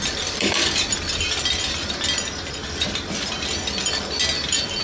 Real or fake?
fake